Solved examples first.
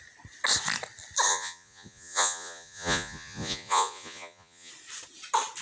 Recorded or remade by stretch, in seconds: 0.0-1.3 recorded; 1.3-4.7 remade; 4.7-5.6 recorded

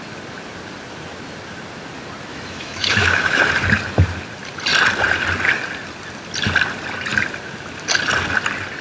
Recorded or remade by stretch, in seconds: 0.0-2.3 recorded; 2.3-3.4 remade; 3.4-8.8 recorded